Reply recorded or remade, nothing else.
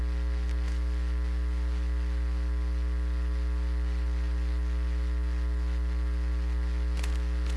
recorded